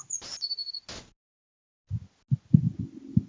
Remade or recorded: recorded